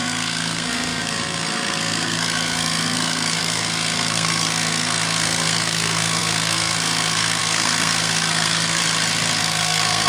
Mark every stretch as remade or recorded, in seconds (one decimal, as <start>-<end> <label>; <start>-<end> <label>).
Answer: 0.0-8.8 remade; 8.8-9.4 recorded; 9.4-10.1 remade